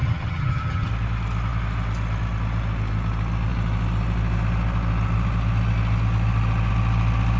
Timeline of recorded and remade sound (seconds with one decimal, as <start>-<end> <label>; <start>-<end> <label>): 0.0-0.9 remade; 0.9-7.4 recorded